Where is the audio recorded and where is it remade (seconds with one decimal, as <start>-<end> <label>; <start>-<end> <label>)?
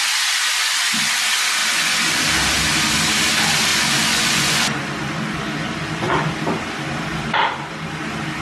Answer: 0.0-1.6 recorded; 1.6-2.2 remade; 2.2-3.7 recorded; 3.7-6.3 remade; 6.3-8.4 recorded